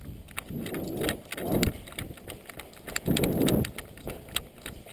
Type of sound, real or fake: real